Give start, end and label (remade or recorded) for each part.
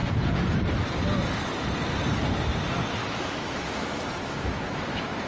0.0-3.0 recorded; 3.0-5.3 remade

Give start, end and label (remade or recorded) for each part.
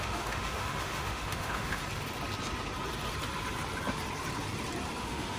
0.0-1.8 remade; 1.8-5.0 recorded; 5.0-5.4 remade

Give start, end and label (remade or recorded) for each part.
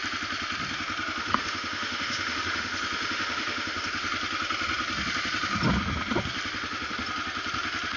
0.0-1.2 recorded; 1.2-3.9 remade; 3.9-8.0 recorded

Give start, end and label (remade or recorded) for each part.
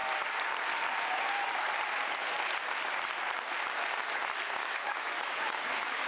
0.0-4.6 recorded; 4.6-6.1 remade